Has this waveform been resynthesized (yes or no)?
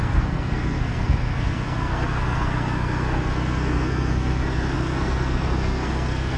yes